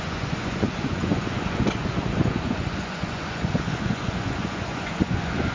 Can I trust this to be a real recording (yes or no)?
no